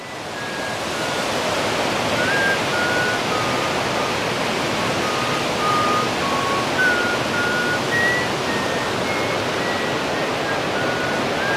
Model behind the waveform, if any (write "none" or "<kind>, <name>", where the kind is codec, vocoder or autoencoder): none